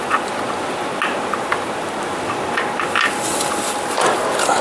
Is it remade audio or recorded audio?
recorded